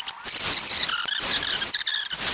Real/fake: real